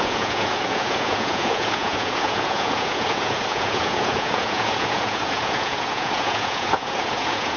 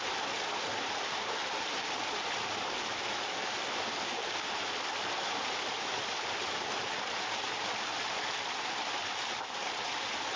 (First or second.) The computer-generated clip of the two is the first